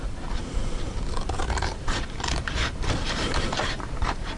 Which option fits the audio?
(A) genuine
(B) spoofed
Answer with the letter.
B